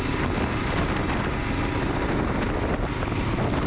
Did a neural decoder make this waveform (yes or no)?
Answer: no